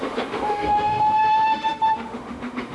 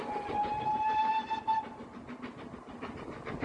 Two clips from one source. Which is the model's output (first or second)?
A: first